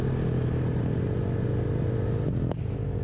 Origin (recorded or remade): recorded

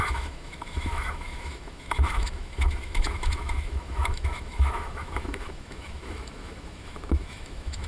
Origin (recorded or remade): remade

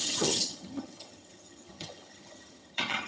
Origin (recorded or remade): remade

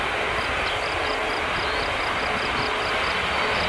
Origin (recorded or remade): recorded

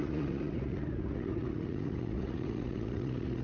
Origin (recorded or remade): remade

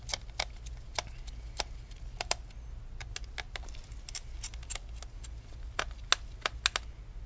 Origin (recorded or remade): recorded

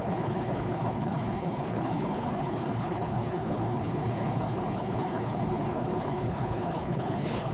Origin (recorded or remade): remade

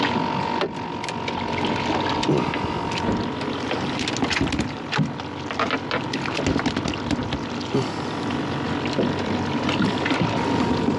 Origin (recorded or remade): recorded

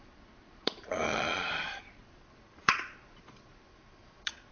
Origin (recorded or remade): remade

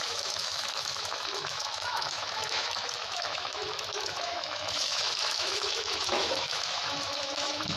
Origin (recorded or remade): remade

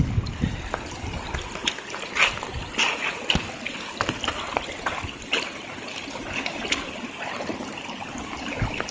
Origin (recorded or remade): recorded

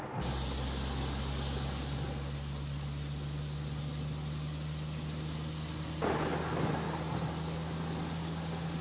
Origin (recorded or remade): recorded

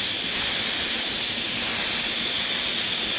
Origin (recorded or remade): recorded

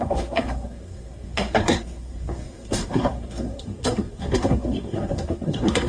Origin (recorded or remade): remade